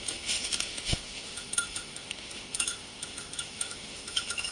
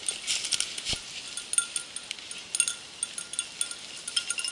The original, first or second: second